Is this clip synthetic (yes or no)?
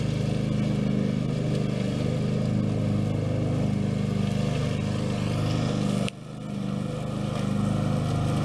no